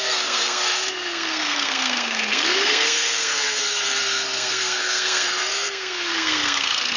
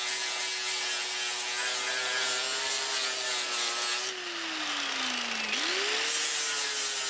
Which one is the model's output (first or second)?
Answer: first